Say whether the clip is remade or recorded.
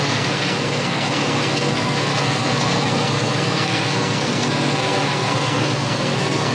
remade